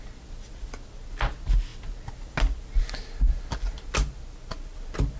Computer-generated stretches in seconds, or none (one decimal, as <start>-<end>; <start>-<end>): none

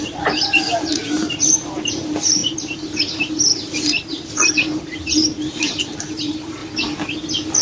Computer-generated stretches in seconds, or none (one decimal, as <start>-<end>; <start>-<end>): 0.0-6.6

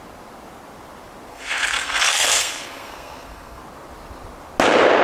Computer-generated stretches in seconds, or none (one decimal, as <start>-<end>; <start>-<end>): 1.3-3.6